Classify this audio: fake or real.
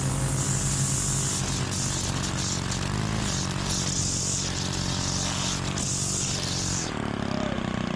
real